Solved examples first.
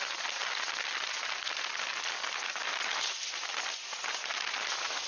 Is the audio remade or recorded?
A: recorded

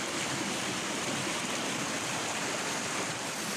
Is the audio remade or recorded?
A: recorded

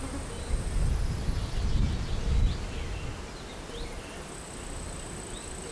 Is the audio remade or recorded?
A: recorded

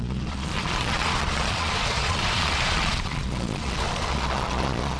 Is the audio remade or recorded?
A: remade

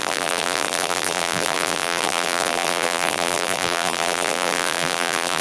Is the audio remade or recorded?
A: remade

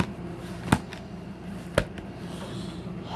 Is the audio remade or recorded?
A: recorded